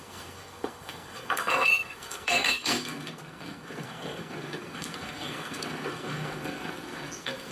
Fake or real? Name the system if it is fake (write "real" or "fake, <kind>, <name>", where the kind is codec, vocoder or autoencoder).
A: fake, codec, SNAC